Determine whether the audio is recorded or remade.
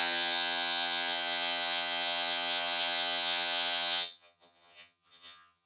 remade